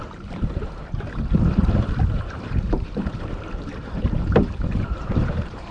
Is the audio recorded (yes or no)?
no